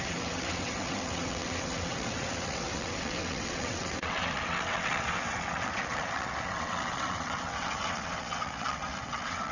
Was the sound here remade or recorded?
remade